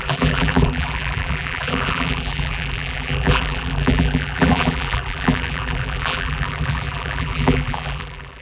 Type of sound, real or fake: fake